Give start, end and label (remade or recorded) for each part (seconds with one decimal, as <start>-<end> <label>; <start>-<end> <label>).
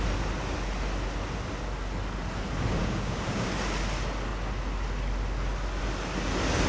0.0-2.8 recorded; 2.8-3.5 remade; 3.5-6.7 recorded